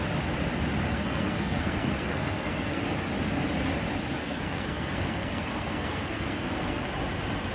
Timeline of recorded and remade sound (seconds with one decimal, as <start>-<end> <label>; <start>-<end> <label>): 0.0-0.9 recorded; 0.9-2.8 remade; 2.8-4.2 recorded; 4.2-6.9 remade; 6.9-7.5 recorded